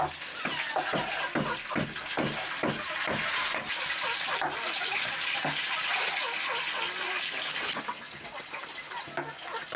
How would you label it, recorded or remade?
recorded